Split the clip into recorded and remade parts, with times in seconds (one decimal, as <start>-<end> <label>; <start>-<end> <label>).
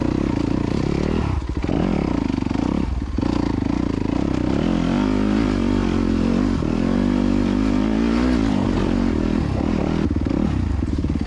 0.0-11.3 recorded